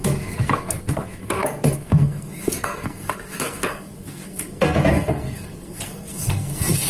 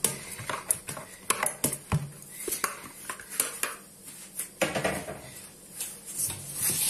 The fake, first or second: first